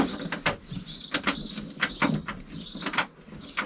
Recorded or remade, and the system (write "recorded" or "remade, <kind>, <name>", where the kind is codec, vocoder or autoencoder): recorded